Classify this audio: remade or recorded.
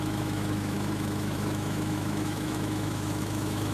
remade